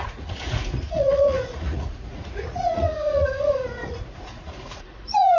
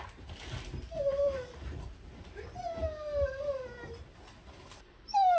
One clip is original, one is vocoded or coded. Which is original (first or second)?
second